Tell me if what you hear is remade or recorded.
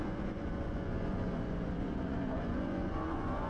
remade